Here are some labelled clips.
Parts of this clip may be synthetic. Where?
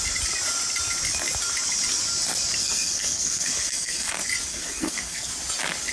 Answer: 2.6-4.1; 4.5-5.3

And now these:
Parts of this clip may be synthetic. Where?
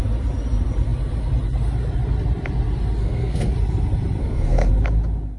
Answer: 3.0-3.5; 4.2-4.7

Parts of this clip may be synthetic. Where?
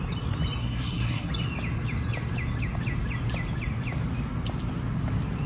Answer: 0.6-1.3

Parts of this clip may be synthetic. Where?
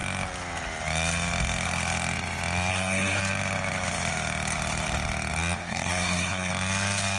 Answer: 2.7-3.2; 5.6-6.5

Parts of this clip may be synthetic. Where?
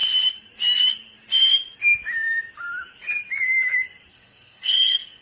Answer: 4.1-5.2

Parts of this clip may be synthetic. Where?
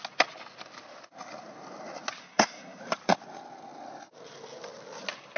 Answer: 2.2-2.8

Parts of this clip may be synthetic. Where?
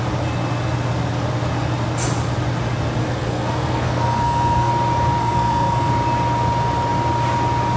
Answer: 3.0-4.7; 5.2-5.9